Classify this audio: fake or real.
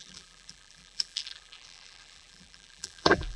fake